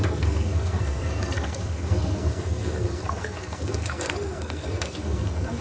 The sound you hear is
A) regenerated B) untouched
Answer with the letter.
A